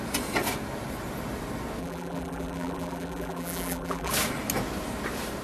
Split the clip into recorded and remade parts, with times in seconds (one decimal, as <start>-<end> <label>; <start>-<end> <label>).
0.0-1.8 recorded; 1.8-4.1 remade; 4.1-5.4 recorded